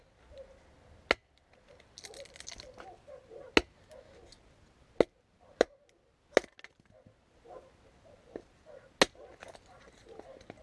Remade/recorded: recorded